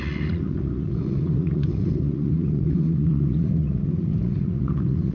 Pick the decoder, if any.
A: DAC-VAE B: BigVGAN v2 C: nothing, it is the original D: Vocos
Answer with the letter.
D